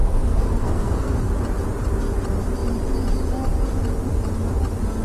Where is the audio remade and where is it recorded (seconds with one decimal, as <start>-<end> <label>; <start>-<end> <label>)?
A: 0.0-1.3 remade; 1.3-5.0 recorded